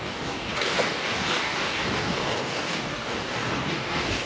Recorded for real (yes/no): no